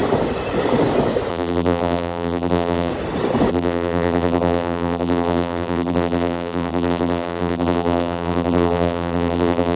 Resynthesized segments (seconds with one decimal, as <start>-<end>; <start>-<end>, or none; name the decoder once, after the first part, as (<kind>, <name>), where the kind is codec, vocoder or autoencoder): 1.3-2.9 (vocoder, BigVGAN v2); 3.5-9.8